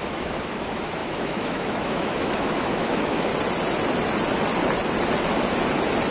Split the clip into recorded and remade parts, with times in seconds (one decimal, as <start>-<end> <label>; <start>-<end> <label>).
0.0-3.3 remade; 3.3-6.1 recorded